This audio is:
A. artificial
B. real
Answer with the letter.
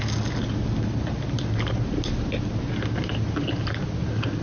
B